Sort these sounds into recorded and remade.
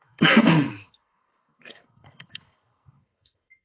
remade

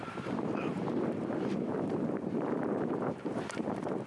remade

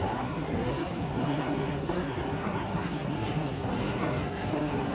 remade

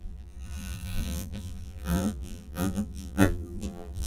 remade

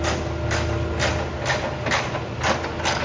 recorded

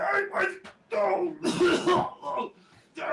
recorded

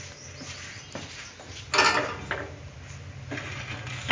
recorded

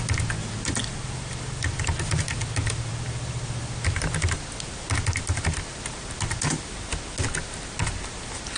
recorded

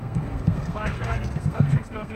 remade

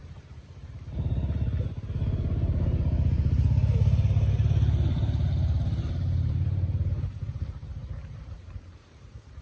remade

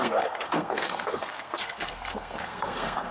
remade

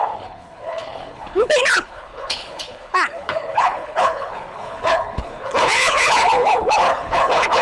remade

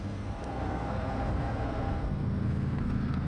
remade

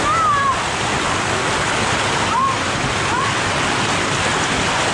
recorded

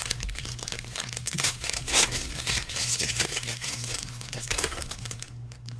remade